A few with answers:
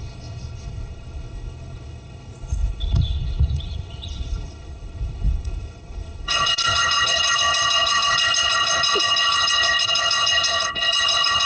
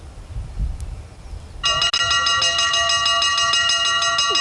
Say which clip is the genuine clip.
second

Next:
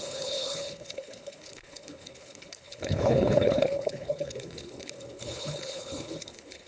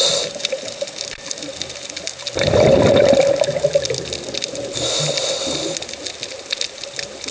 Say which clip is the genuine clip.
second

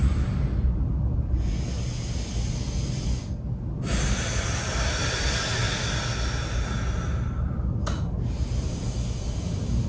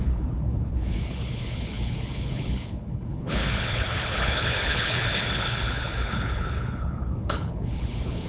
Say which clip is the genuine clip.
first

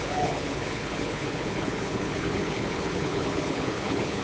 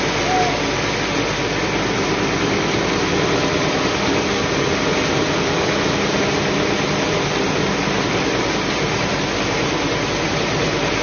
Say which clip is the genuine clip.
second